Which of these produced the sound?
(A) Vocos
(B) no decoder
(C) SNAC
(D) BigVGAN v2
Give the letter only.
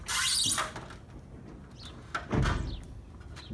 B